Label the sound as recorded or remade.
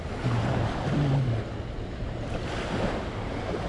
recorded